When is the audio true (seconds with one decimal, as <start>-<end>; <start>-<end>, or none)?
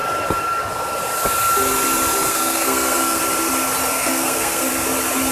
0.0-2.3; 3.2-3.9; 4.7-5.3